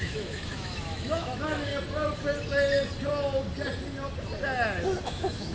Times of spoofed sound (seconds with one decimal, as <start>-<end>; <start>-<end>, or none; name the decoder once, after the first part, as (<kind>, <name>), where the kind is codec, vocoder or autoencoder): 0.0-1.7 (autoencoder, DAC-VAE); 5.0-5.5